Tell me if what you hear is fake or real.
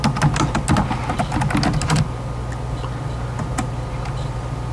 real